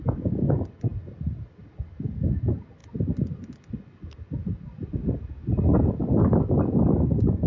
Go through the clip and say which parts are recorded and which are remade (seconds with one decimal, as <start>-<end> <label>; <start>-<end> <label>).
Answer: 0.0-7.5 recorded